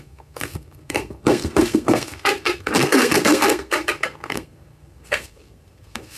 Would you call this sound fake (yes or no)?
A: yes